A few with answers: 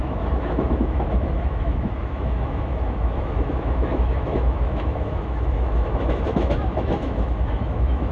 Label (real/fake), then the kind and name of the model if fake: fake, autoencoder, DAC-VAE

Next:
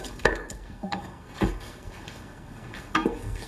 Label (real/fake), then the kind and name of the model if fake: fake, codec, SNAC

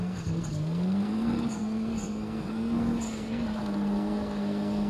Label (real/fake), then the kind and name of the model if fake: fake, codec, SNAC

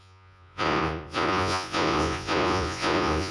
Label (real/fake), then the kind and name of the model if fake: fake, vocoder, Vocos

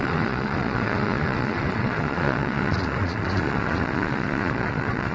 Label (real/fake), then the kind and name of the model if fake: fake, vocoder, Vocos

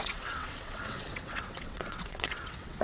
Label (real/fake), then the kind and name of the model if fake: fake, vocoder, WaveNeXt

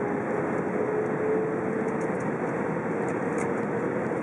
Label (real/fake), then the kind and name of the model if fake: real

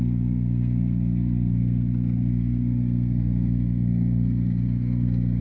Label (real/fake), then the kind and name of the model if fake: fake, codec, SNAC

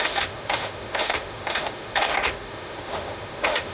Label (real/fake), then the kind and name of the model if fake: fake, autoencoder, DAC-VAE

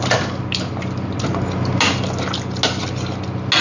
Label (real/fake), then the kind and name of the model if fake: real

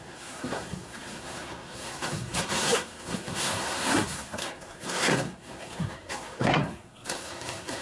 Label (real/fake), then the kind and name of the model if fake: fake, codec, SNAC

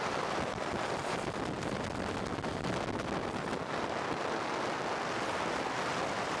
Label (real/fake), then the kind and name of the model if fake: real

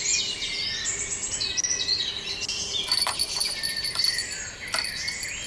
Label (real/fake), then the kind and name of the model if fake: real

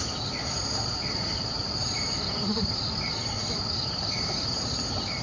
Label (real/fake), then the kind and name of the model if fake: fake, vocoder, BigVGAN v2